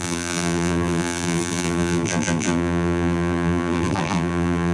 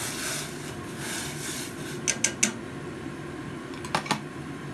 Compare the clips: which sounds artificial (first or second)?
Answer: first